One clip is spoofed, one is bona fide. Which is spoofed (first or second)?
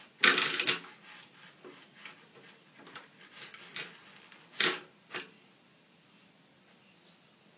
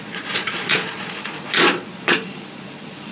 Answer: second